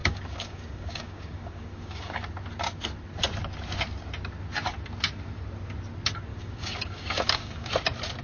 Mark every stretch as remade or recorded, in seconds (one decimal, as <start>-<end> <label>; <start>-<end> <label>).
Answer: 0.0-2.2 remade; 2.2-6.3 recorded; 6.3-7.7 remade; 7.7-8.2 recorded